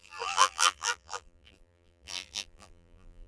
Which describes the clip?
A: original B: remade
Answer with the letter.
B